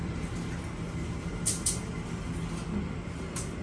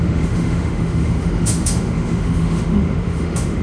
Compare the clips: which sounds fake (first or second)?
second